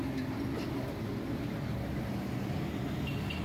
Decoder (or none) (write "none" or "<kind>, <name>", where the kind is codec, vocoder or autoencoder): none